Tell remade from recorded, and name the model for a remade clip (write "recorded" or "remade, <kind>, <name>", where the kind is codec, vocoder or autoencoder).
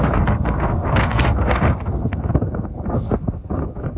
remade, codec, SNAC